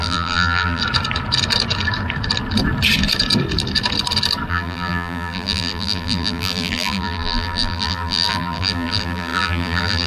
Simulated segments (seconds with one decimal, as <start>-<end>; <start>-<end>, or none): 0.0-0.8; 4.5-10.1